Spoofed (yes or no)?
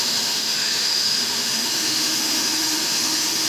yes